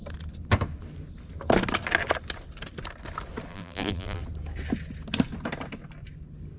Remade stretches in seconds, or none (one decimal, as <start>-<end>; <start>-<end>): 3.5-4.2

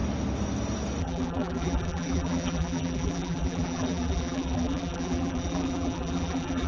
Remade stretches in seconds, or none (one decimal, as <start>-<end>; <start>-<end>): 1.0-6.7

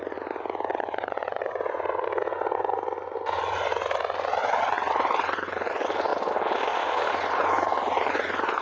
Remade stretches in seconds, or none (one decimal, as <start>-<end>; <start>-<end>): 0.7-2.7; 4.4-4.9

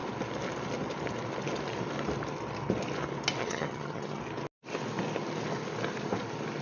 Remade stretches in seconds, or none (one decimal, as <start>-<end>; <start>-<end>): 3.4-4.2

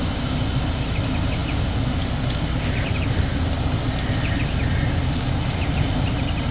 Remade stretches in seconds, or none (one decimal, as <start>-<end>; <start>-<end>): none

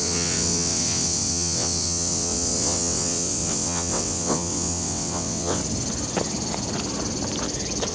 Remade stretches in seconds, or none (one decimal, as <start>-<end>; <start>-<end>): 0.0-5.6

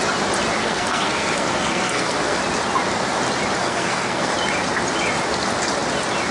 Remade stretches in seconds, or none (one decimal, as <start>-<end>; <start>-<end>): 0.6-2.4; 3.6-4.3

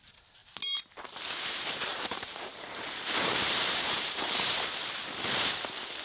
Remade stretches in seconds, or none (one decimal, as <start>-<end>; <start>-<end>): 1.9-4.5